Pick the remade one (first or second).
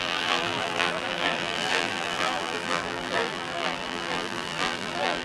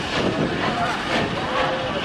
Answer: first